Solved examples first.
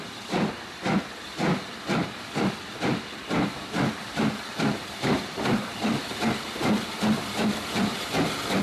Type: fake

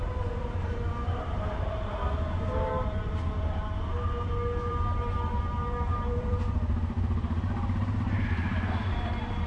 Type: fake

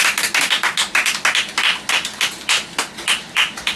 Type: real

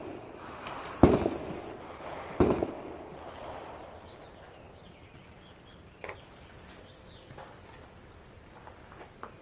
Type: real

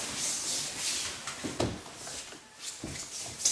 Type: real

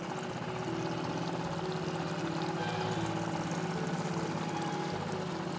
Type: real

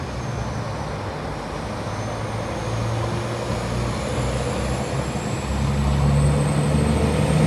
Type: real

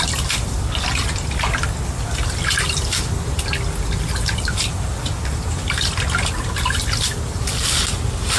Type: real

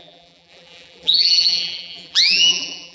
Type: fake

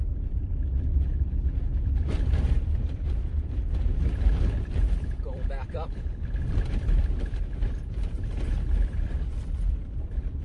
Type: fake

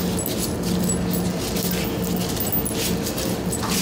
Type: real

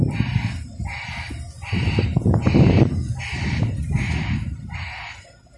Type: real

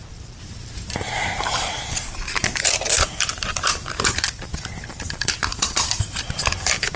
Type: fake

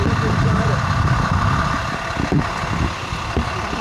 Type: fake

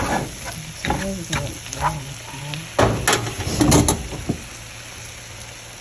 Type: real